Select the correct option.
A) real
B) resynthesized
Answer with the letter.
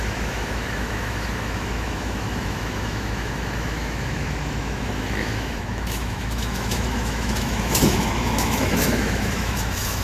B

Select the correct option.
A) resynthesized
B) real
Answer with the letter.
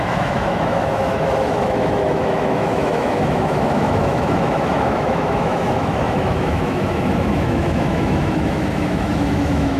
A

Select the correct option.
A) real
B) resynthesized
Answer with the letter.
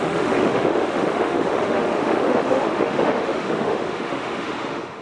B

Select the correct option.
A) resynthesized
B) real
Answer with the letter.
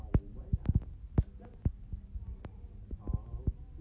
B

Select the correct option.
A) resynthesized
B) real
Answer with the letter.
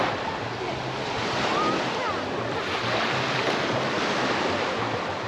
B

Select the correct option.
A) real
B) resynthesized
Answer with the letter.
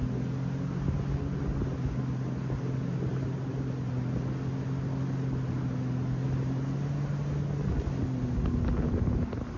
A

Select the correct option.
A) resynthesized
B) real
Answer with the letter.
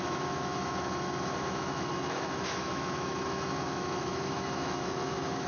A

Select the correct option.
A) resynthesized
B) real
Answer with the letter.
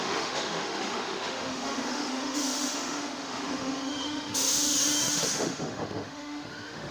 A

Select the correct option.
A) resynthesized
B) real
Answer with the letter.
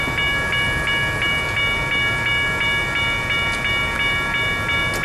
B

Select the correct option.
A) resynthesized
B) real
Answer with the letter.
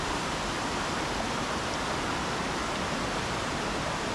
B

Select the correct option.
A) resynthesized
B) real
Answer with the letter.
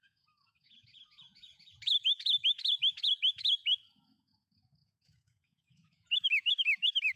A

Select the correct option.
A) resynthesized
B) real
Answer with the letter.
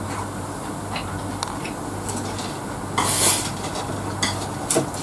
B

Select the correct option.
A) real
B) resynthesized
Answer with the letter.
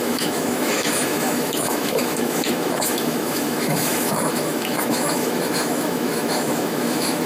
B